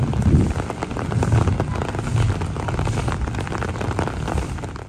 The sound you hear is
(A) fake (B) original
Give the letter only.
B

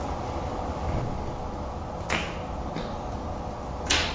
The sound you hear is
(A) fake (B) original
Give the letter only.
B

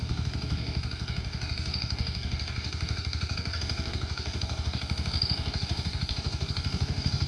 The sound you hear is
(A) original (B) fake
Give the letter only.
B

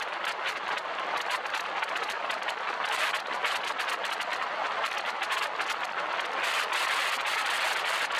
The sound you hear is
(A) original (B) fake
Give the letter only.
A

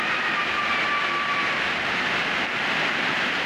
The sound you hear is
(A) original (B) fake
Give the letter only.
A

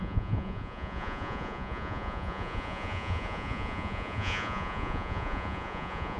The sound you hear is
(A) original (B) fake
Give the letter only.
B